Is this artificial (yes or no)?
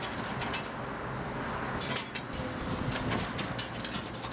no